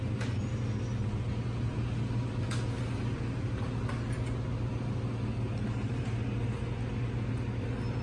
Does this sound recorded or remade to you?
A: recorded